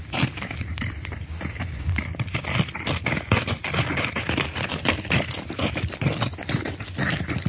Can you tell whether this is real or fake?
fake